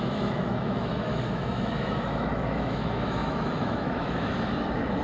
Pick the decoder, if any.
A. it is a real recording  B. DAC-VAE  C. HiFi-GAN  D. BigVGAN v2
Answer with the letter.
B